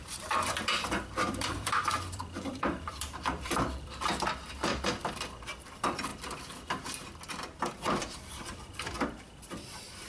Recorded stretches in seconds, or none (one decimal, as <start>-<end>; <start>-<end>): 6.1-7.7